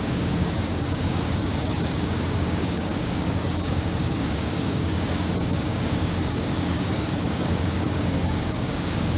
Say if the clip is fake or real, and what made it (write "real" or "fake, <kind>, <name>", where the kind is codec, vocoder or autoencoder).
fake, codec, DAC